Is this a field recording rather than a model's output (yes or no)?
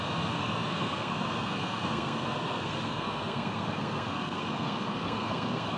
no